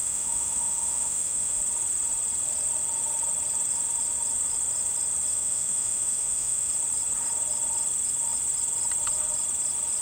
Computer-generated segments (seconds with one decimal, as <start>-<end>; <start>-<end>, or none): 0.0-1.6; 5.3-6.7